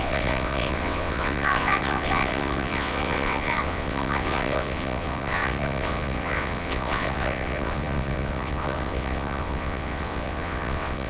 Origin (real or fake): fake